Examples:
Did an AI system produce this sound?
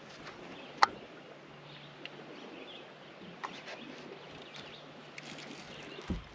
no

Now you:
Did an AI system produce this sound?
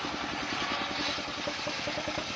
no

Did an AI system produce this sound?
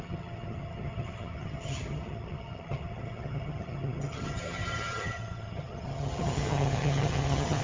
yes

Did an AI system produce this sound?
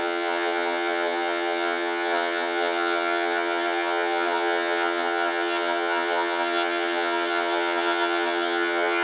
yes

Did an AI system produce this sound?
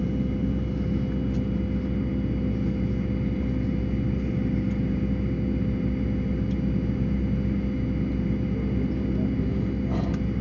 no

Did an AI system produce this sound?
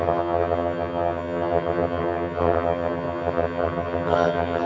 yes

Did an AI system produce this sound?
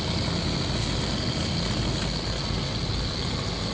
no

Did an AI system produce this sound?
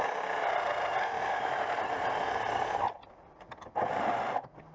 no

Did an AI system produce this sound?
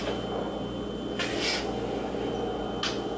no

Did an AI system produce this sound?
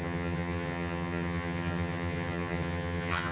yes